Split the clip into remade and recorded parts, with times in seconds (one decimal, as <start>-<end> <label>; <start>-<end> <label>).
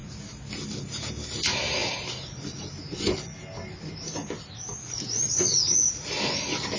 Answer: 0.0-6.8 recorded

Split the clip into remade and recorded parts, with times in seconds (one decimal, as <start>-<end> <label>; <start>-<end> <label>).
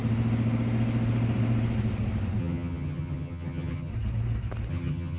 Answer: 0.0-2.4 recorded; 2.4-3.9 remade; 3.9-4.7 recorded; 4.7-5.2 remade